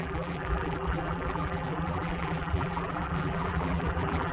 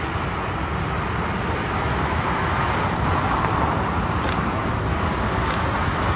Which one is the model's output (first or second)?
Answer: first